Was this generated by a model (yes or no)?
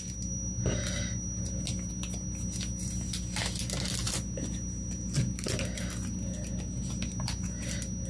no